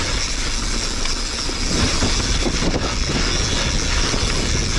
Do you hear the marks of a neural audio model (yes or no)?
no